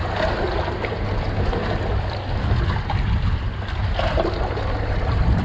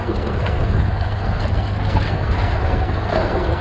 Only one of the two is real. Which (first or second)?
first